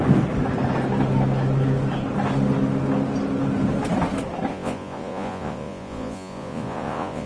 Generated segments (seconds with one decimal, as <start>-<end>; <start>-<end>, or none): 4.5-7.3